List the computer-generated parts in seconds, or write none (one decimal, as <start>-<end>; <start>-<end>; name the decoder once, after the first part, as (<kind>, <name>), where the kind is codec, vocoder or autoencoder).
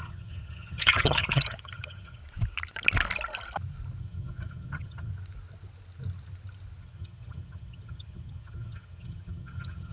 0.0-2.2 (vocoder, HiFi-GAN); 4.0-5.1; 6.8-9.9